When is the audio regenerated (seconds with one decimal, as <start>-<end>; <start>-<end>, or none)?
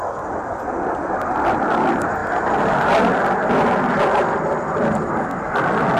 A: none